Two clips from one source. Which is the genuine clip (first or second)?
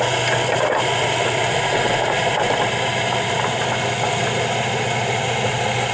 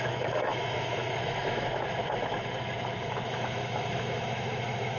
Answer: first